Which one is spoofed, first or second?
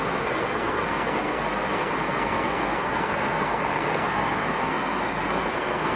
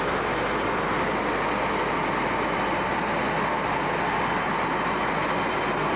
first